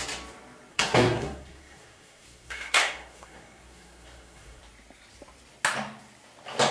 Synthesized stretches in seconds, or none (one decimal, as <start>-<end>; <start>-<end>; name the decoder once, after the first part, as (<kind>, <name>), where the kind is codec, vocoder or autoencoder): 0.7-4.6 (codec, SNAC)